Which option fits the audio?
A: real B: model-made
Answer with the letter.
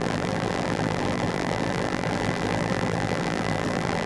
B